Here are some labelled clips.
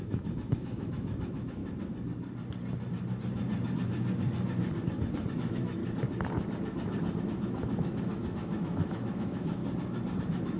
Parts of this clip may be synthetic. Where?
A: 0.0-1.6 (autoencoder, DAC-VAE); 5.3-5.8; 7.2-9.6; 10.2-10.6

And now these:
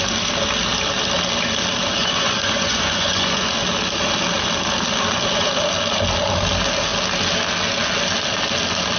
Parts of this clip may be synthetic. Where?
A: 2.0-3.5 (vocoder, Vocos)

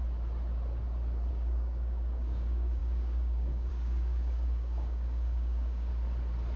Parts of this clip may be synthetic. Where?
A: 1.3-5.9 (codec, DAC)